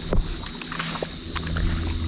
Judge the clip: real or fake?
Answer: real